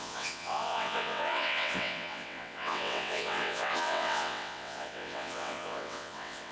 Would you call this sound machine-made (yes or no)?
yes